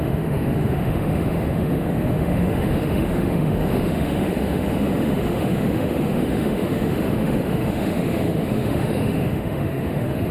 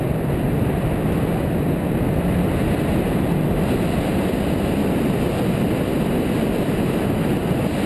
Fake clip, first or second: first